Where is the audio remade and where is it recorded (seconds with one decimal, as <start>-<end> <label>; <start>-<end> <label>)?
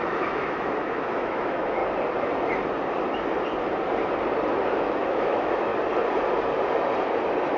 0.0-1.8 remade; 1.8-4.5 recorded; 4.5-5.7 remade; 5.7-7.6 recorded